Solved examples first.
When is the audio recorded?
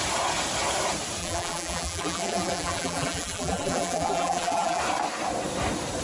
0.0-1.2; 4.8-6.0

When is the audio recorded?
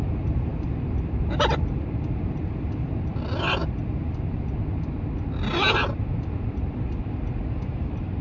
3.6-5.7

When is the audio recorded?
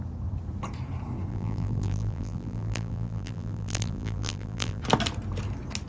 0.0-1.3; 4.8-5.9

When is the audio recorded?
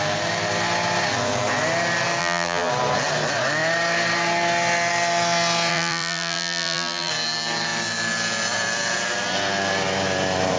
0.0-2.2; 2.7-5.7; 7.1-10.6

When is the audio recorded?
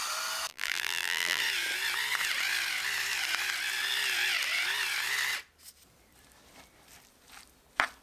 0.0-0.5; 1.4-8.0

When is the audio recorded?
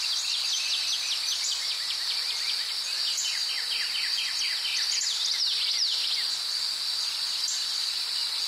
0.0-8.5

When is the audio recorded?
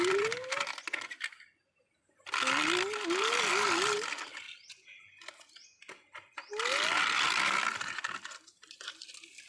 4.3-8.5